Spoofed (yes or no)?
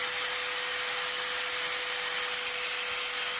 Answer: no